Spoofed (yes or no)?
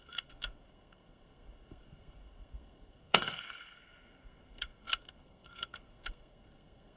yes